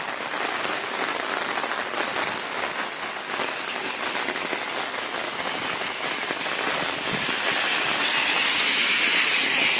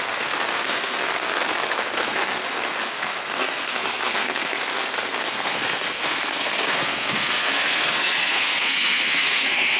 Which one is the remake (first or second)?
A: second